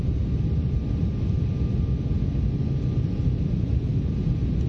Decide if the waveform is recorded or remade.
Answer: recorded